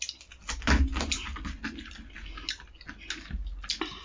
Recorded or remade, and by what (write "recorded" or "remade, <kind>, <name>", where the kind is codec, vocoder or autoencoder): recorded